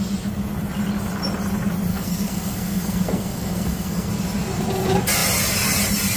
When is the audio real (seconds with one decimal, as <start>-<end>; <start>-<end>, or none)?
0.0-1.9; 4.1-6.2